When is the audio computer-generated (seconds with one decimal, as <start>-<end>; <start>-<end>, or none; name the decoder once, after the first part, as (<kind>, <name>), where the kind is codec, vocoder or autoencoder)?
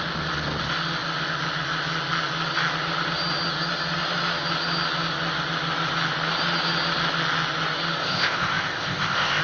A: 8.0-9.4 (codec, ZipCodec)